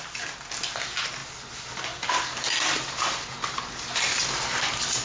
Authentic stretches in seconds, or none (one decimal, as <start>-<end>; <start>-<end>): 0.0-5.0